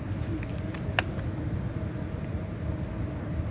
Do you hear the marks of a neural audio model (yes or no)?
no